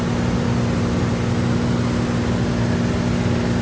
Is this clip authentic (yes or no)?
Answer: yes